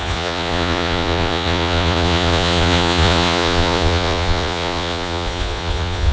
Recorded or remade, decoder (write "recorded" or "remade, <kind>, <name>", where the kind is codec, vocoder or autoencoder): remade, vocoder, Vocos